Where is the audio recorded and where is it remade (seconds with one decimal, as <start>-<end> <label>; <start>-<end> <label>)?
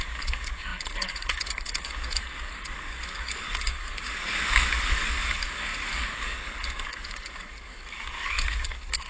0.0-9.1 remade